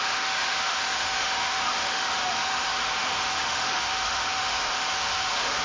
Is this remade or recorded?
remade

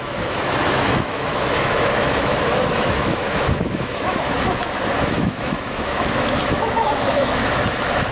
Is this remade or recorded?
remade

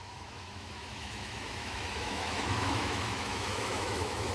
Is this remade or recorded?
remade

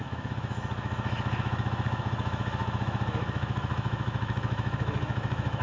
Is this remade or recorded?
remade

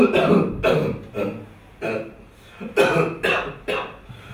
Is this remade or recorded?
recorded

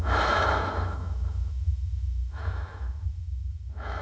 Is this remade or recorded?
remade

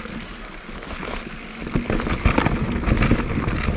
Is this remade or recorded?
recorded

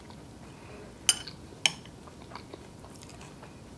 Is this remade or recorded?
recorded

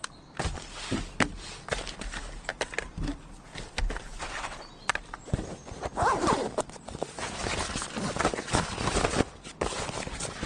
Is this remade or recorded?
recorded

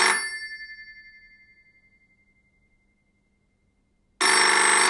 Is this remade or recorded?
recorded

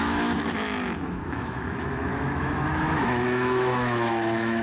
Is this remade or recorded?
remade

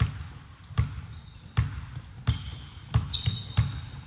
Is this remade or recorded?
recorded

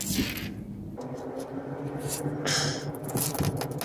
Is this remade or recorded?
recorded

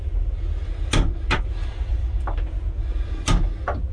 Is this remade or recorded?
recorded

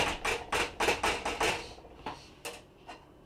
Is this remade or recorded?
recorded